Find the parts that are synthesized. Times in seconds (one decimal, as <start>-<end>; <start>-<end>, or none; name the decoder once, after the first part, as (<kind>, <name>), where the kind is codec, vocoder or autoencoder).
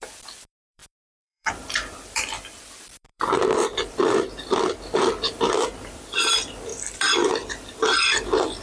0.0-8.6 (vocoder, BigVGAN v2)